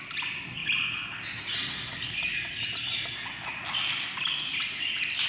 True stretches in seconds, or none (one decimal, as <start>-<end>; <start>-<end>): 0.0-5.3